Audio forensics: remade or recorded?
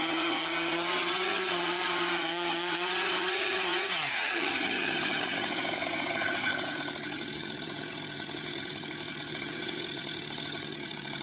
remade